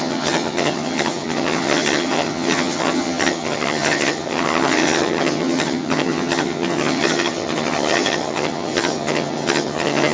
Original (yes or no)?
no